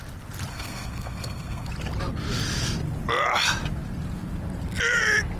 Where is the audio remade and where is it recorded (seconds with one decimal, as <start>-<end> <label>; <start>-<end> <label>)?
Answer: 0.0-0.5 recorded; 0.5-1.7 remade; 1.7-5.4 recorded